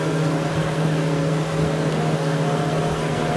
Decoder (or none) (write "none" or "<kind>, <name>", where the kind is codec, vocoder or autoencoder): codec, SNAC